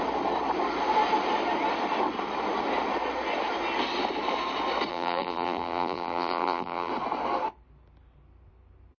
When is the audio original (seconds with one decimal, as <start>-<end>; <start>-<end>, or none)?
0.0-4.9; 6.9-9.0

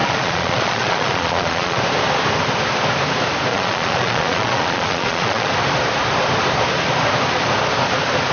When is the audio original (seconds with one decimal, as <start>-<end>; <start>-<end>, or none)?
1.8-3.5; 5.5-8.3

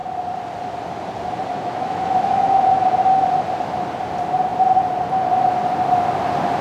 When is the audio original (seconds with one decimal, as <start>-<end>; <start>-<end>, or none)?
0.0-1.5; 2.6-6.6

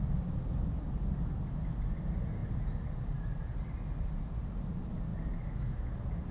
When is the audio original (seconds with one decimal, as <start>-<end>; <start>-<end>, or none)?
0.0-6.3

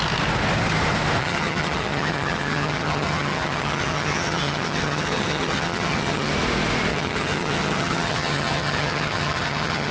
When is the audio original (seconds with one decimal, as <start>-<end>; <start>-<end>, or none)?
0.0-1.2; 6.3-6.9

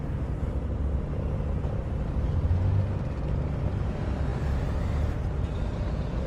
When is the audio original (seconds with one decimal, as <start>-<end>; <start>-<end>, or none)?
0.0-6.3

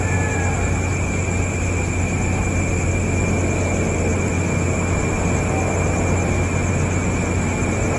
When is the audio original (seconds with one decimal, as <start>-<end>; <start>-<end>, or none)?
0.0-8.0

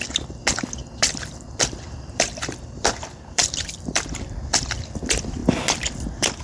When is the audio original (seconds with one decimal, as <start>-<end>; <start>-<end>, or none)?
0.0-0.8; 4.6-6.4